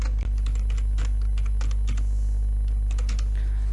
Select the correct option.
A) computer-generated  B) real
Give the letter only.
B